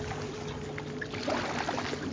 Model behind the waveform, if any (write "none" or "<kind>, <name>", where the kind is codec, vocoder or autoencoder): none